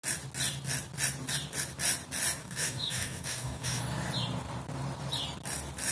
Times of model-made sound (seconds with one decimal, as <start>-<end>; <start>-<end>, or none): 2.4-3.8